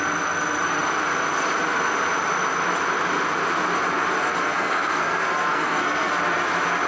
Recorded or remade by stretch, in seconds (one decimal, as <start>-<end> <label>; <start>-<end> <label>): 0.0-4.4 recorded; 4.4-6.1 remade; 6.1-6.9 recorded